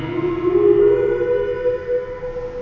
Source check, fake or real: real